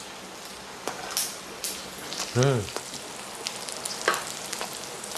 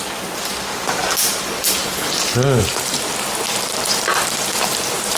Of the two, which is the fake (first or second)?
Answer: second